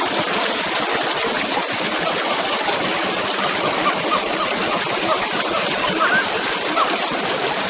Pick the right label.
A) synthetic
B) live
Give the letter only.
B